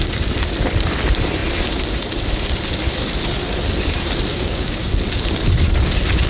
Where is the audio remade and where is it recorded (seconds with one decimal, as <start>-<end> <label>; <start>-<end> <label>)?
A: 0.0-4.3 recorded; 4.3-4.9 remade; 4.9-6.3 recorded